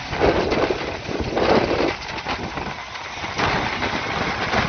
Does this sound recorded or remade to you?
recorded